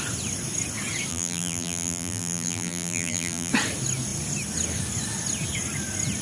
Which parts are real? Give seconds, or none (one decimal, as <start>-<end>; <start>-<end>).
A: 0.0-1.1; 3.5-6.2